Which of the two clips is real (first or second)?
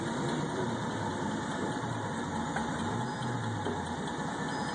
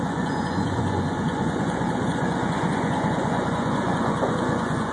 first